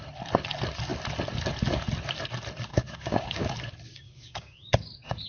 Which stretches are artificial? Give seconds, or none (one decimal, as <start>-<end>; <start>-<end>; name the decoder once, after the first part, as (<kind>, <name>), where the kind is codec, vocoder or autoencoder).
2.7-3.5 (codec, DAC); 3.9-5.3